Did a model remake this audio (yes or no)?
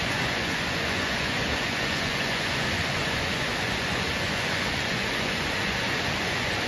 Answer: yes